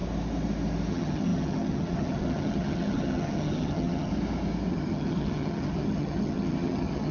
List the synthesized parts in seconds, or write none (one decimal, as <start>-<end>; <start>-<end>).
0.9-4.1; 4.7-7.1